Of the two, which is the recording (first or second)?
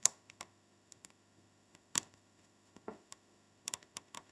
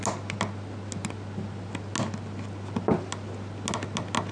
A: second